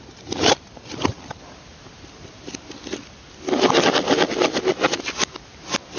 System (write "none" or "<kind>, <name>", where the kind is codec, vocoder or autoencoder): none